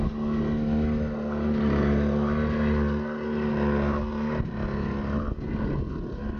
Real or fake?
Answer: real